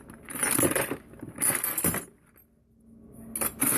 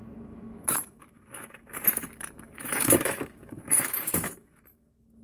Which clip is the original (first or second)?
first